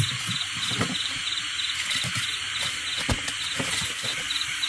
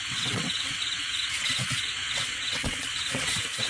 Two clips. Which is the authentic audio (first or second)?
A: first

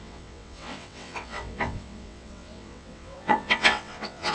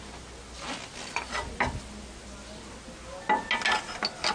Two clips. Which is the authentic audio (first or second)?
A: second